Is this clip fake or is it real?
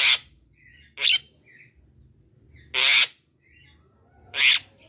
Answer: real